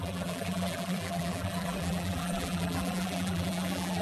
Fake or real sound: fake